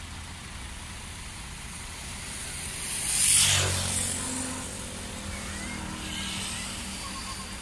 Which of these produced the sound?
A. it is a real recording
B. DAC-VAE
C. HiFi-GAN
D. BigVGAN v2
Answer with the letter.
A